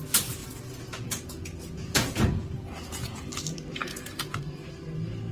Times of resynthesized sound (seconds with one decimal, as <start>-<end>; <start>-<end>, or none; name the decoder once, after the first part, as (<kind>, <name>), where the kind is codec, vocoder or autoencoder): 0.4-3.3 (vocoder, Vocos); 3.8-4.4